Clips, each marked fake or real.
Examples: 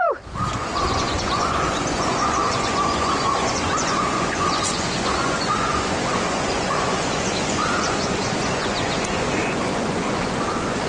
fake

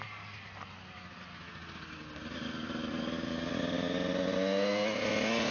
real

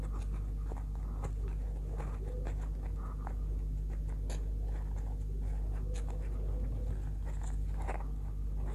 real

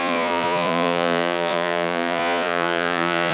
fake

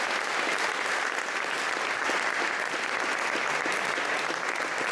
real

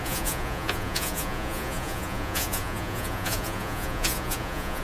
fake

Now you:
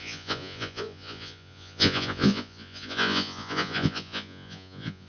fake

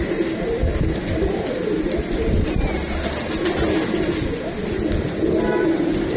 real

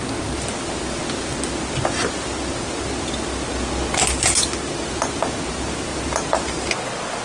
real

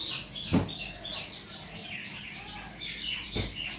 real